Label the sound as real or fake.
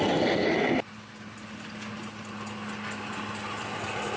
real